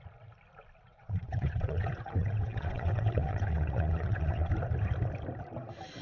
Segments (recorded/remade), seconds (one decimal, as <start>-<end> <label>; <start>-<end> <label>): 0.0-0.9 recorded; 0.9-4.5 remade; 4.5-6.0 recorded